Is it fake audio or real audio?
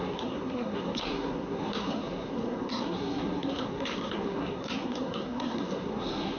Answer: fake